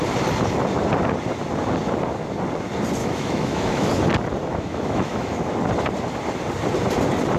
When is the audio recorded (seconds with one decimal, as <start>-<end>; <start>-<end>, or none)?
0.0-3.0; 3.9-4.5; 5.4-7.4